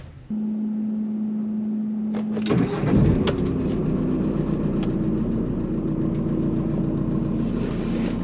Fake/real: real